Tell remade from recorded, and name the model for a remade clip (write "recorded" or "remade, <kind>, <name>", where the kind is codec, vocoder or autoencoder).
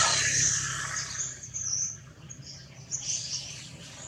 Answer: remade, vocoder, BigVGAN v2